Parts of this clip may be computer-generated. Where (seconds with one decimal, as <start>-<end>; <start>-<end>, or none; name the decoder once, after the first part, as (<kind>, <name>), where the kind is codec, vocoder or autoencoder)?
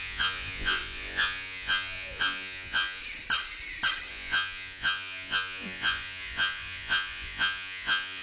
0.0-3.0 (vocoder, Vocos); 4.1-8.2